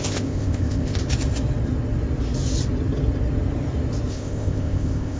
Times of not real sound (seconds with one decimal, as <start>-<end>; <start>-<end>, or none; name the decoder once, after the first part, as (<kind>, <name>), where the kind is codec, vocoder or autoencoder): 0.0-1.0 (codec, ZipCodec); 4.1-5.2

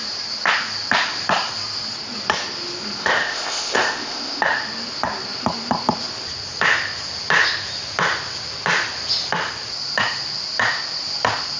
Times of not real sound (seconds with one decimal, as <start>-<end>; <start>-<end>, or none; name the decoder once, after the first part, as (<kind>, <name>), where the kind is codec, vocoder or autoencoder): 3.0-4.4 (codec, ZipCodec)